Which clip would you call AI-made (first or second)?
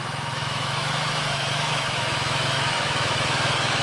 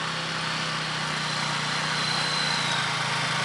first